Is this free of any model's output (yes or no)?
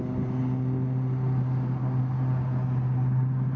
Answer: yes